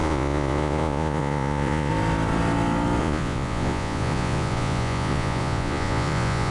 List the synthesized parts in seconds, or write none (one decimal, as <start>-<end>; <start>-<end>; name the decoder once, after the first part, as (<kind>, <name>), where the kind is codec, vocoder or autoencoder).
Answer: 0.0-1.9 (vocoder, Vocos); 3.0-6.5